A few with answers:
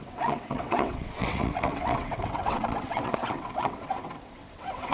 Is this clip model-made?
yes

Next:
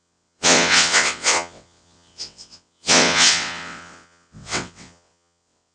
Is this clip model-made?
yes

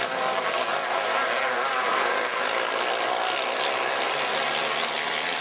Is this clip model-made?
no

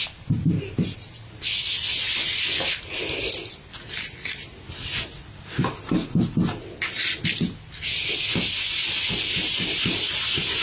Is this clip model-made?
no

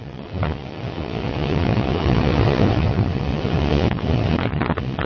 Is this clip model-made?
yes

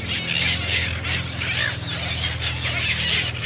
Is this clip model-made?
no